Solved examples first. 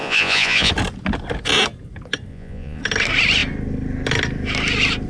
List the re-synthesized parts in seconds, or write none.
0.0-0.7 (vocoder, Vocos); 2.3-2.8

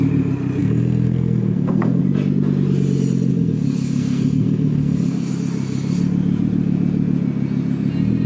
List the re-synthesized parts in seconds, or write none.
0.6-2.0 (codec, SNAC); 3.3-5.3

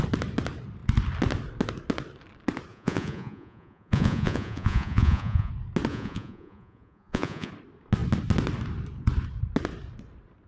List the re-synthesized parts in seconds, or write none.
2.7-5.5 (vocoder, Vocos); 5.9-7.5

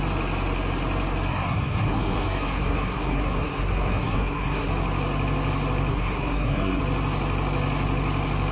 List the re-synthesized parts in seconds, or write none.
1.3-4.7 (codec, SNAC); 5.9-6.8